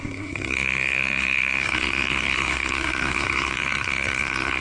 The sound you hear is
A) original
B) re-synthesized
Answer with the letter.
B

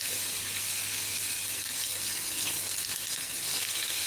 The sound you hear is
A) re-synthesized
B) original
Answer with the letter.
A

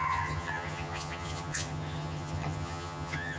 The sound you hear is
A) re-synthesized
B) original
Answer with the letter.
A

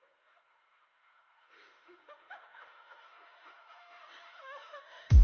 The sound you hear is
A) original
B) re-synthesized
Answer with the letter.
B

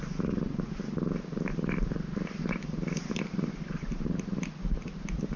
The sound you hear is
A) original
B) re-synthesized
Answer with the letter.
A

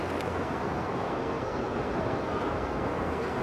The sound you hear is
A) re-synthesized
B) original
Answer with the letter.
A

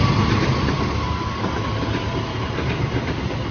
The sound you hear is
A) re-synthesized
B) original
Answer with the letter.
B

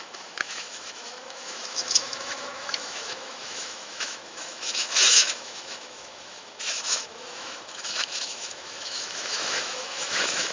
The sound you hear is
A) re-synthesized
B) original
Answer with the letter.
A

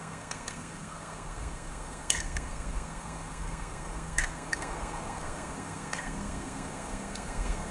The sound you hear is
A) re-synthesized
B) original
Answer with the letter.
A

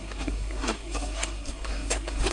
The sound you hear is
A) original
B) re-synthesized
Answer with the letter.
B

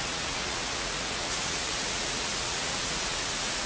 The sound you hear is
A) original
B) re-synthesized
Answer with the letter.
B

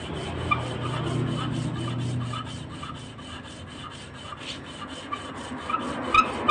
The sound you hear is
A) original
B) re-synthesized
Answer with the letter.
A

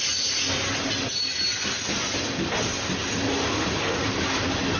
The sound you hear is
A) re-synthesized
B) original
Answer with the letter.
B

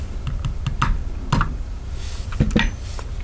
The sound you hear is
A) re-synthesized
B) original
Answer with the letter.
B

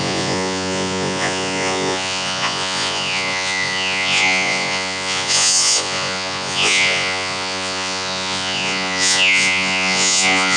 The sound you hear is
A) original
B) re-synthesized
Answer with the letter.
B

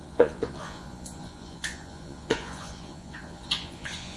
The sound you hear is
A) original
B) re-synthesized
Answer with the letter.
B